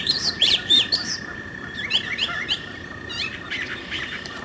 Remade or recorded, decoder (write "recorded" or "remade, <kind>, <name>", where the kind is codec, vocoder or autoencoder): remade, vocoder, BigVGAN v2